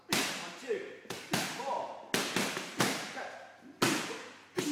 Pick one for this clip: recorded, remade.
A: recorded